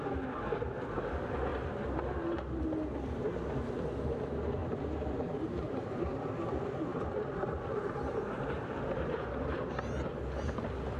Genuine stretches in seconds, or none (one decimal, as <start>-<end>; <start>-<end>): 0.0-4.6; 5.9-6.9; 8.8-11.0